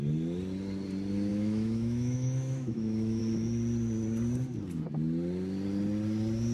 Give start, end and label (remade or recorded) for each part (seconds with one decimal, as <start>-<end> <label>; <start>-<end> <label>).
0.0-1.3 recorded; 1.3-3.2 remade; 3.2-6.5 recorded